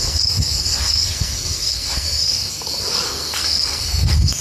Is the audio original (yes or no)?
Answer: no